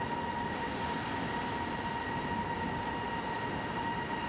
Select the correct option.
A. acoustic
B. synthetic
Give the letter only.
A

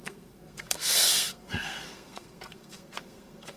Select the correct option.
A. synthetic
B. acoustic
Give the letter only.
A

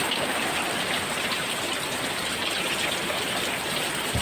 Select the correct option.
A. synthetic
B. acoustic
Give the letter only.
B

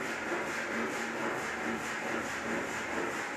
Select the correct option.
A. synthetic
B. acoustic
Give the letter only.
B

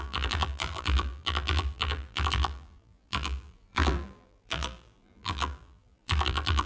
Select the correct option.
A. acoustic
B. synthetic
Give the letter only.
B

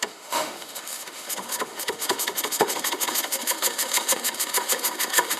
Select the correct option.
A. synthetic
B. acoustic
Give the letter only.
A